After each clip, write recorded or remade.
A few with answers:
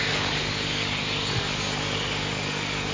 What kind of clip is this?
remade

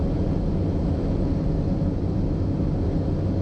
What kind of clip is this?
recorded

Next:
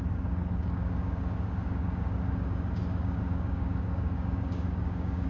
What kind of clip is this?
remade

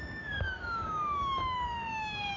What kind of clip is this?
remade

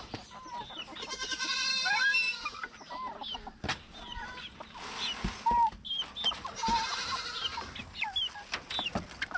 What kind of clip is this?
recorded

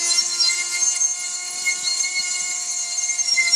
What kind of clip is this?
recorded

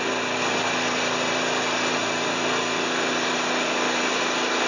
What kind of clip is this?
recorded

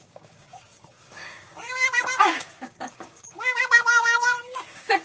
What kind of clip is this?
remade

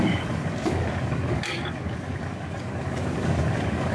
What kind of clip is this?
remade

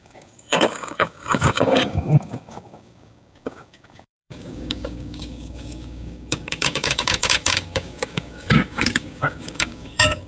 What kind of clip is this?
remade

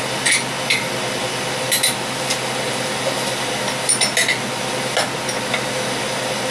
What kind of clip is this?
recorded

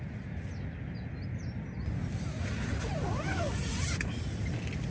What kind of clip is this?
recorded